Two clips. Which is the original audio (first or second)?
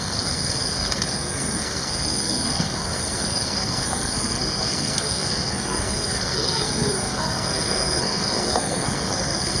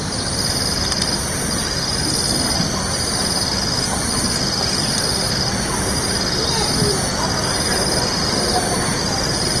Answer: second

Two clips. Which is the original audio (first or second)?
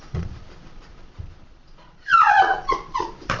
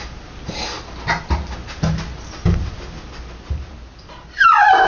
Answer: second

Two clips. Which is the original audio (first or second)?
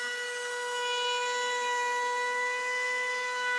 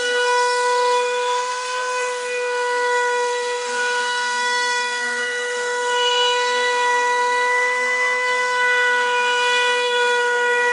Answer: first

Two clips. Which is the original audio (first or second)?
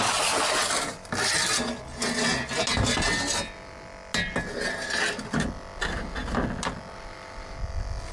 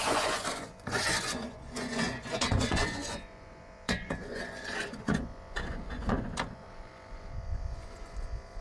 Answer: first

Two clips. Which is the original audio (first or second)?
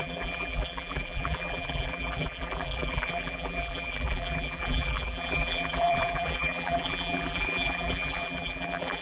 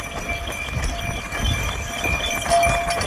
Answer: second